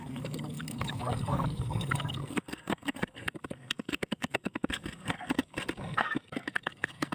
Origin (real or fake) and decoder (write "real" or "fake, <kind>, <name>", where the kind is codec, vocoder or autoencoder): fake, codec, SNAC